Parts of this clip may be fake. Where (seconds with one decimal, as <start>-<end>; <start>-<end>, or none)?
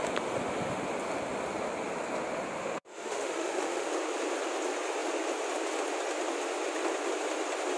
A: 2.6-3.9